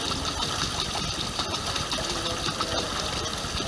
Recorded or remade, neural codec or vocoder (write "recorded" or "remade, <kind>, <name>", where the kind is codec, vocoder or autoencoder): recorded